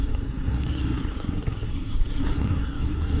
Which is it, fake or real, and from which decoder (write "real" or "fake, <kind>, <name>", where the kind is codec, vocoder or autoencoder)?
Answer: fake, codec, SNAC